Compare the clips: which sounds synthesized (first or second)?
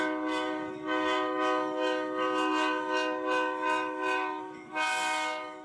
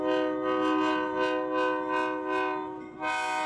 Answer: first